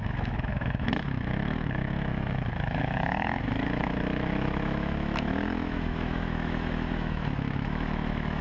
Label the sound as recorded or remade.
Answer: remade